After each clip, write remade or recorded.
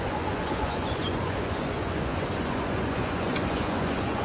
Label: remade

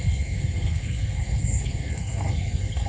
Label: remade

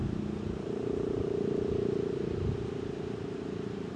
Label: recorded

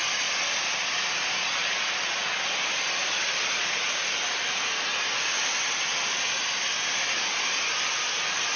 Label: recorded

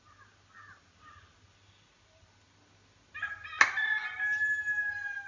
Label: recorded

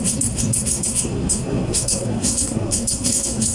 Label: remade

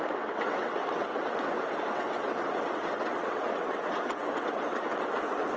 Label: remade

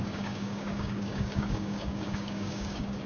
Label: remade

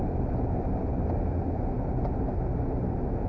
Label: recorded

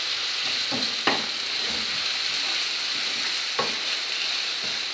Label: recorded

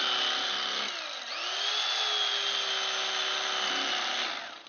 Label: recorded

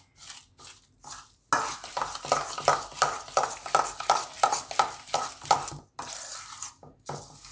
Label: recorded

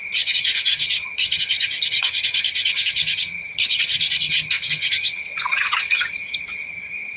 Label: remade